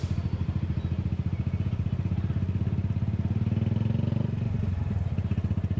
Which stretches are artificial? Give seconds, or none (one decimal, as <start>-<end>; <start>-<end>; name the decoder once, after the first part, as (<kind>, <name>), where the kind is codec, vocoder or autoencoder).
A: 4.1-5.0 (vocoder, BigVGAN v2)